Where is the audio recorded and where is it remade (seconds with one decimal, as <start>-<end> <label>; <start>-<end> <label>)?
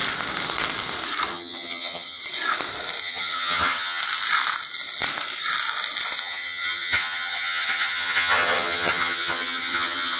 0.0-1.3 recorded; 1.3-2.2 remade; 2.2-3.0 recorded; 3.0-4.0 remade; 4.0-6.2 recorded; 6.2-10.2 remade